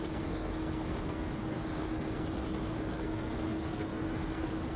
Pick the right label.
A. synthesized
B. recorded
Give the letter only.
A